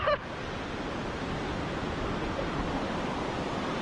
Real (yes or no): yes